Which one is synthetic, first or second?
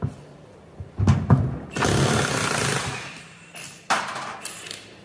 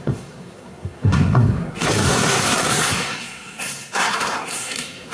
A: second